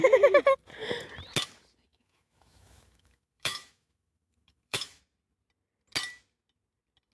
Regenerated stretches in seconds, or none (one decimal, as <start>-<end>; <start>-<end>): 1.9-5.0